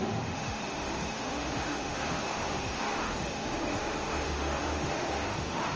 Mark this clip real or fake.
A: fake